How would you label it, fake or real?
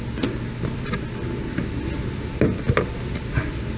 real